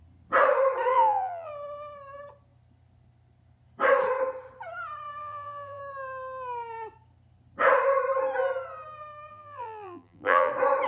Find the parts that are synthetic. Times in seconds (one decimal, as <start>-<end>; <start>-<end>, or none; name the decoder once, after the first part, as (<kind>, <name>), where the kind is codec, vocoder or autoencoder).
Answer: 0.9-1.5 (vocoder, BigVGAN v2); 5.2-5.8; 9.3-10.5